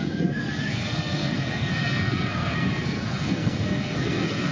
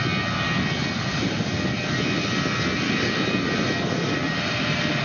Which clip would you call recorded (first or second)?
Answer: second